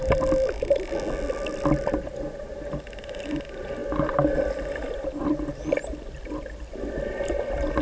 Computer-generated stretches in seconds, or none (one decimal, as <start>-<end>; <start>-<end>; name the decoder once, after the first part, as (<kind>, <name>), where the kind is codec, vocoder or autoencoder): none